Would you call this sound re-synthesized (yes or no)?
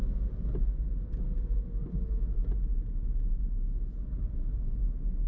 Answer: no